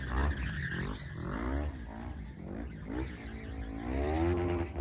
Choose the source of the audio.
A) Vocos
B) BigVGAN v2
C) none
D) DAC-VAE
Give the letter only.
C